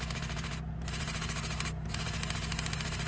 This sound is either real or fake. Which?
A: real